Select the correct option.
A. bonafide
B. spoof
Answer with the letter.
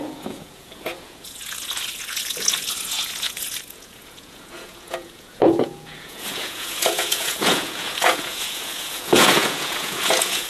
B